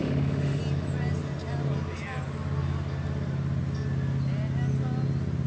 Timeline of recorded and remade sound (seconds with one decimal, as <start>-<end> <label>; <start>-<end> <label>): 0.0-0.6 remade; 0.6-5.5 recorded